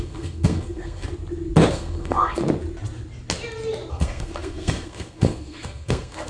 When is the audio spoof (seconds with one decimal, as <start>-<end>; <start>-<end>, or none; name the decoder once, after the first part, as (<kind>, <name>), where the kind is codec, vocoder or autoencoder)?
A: 0.0-1.1 (codec, SNAC); 1.7-2.4; 3.9-6.3